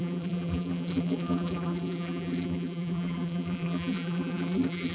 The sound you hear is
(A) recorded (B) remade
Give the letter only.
B